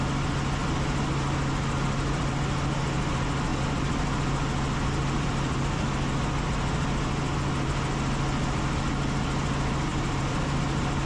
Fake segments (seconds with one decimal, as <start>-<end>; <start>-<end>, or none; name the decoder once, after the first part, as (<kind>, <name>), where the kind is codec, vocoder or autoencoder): 3.5-5.6 (vocoder, BigVGAN v2); 9.9-10.6